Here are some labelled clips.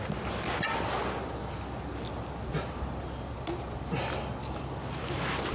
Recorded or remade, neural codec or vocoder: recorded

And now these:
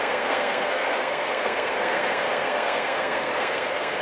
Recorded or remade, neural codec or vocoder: remade, codec, SNAC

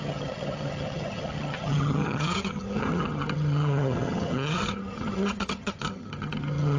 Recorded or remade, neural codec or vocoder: remade, vocoder, HiFi-GAN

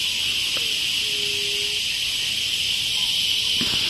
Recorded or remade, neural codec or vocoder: recorded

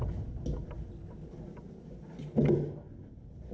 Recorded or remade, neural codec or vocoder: recorded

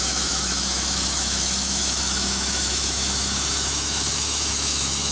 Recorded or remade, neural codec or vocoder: remade, autoencoder, DAC-VAE